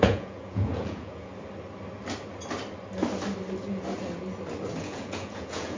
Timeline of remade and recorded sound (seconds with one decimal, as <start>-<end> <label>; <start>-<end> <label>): 0.0-1.3 remade; 1.3-4.8 recorded; 4.8-5.8 remade